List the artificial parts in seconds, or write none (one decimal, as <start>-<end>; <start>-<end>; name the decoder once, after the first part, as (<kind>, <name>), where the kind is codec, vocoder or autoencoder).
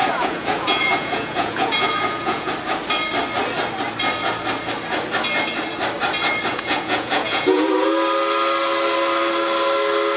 0.0-2.5 (vocoder, Vocos); 6.5-7.6